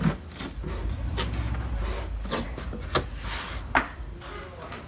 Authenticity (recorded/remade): recorded